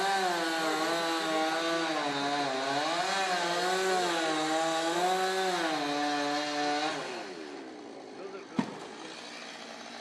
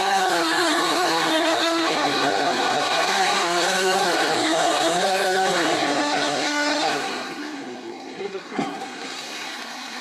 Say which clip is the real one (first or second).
first